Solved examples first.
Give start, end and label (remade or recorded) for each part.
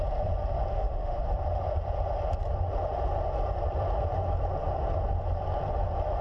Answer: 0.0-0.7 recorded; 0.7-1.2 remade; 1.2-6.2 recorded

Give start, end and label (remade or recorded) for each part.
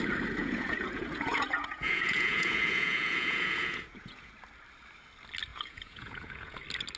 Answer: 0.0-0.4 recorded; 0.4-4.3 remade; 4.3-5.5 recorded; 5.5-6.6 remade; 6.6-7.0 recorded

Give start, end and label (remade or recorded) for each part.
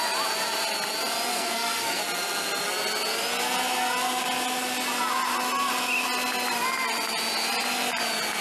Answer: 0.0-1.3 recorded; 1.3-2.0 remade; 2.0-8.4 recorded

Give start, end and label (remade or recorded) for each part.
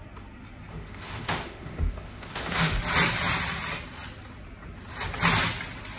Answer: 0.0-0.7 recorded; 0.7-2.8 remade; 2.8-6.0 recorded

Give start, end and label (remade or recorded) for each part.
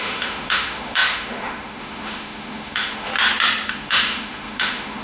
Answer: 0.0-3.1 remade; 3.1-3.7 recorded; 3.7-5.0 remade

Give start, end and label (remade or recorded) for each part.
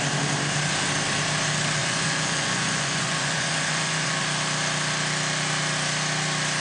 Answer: 0.0-1.8 recorded; 1.8-4.2 remade; 4.2-6.6 recorded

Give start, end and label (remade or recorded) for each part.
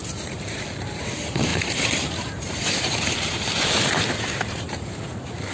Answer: 0.0-1.0 remade; 1.0-1.5 recorded; 1.5-4.8 remade; 4.8-5.5 recorded